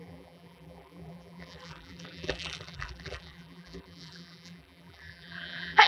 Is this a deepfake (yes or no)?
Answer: yes